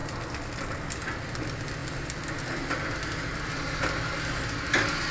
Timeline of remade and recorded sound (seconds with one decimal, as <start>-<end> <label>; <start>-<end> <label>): 0.0-5.1 recorded